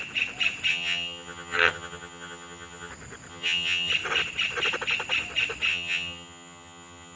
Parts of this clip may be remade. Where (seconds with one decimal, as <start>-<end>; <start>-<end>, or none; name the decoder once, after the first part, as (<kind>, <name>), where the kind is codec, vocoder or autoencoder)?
0.7-2.9 (vocoder, HiFi-GAN); 3.3-3.9; 5.7-7.2